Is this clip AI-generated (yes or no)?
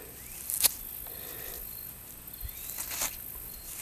no